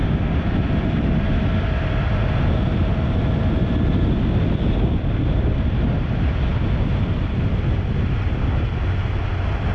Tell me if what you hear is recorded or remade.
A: recorded